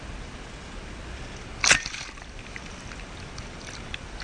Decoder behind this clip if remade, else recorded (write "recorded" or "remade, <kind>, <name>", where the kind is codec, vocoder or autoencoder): recorded